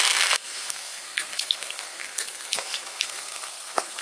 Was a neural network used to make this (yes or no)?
yes